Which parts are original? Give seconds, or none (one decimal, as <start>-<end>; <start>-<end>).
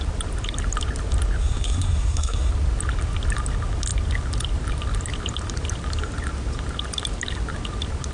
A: 0.0-1.4; 2.5-8.1